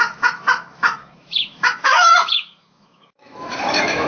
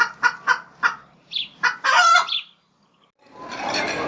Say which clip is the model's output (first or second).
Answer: first